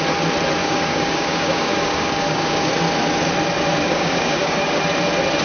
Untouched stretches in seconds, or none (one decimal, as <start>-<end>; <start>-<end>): 0.0-0.6; 2.7-3.7; 4.8-5.4